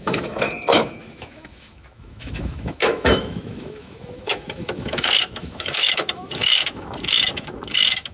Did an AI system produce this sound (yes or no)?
yes